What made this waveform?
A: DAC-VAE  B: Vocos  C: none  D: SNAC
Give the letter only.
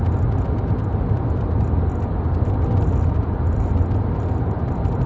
C